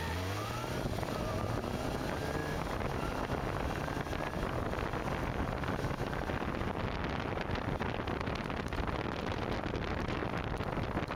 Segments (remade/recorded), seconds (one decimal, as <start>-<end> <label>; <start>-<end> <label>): 0.0-10.2 recorded; 10.2-11.2 remade